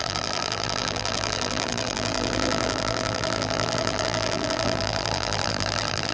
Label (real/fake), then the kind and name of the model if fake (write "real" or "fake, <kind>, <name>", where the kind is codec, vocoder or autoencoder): fake, vocoder, BigVGAN v2